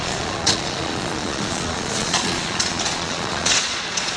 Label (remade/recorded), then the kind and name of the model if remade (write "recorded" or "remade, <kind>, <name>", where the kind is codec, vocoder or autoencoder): remade, vocoder, Vocos